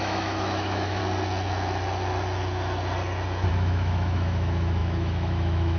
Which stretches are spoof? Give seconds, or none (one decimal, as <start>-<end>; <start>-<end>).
0.0-1.0; 3.5-5.8